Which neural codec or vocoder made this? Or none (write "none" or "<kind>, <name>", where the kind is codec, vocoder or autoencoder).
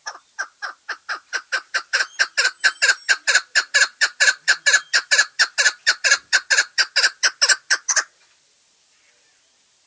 none